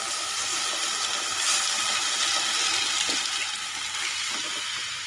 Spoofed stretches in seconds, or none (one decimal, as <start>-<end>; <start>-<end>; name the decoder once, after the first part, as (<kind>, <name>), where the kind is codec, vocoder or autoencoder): none